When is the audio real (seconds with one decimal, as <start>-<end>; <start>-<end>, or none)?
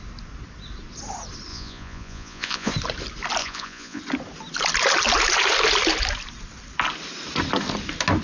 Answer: 0.0-1.5; 2.7-3.4; 4.0-8.2